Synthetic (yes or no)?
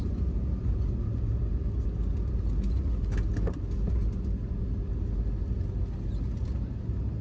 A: no